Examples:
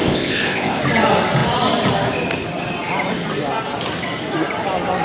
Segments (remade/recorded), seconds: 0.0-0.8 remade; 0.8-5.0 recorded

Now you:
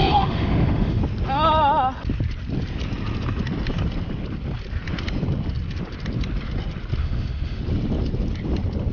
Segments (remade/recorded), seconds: 0.0-1.0 remade; 1.0-7.0 recorded; 7.0-7.6 remade; 7.6-8.9 recorded

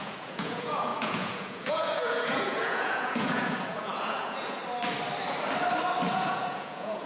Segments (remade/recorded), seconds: 0.0-4.6 remade; 4.6-6.1 recorded; 6.1-7.1 remade

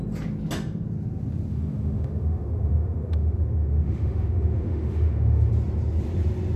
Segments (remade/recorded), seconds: 0.0-1.5 recorded; 1.5-5.5 remade; 5.5-6.6 recorded